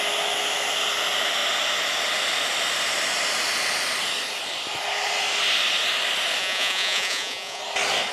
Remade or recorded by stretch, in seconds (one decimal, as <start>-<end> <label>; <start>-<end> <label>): 0.0-6.4 recorded; 6.4-7.6 remade; 7.6-8.1 recorded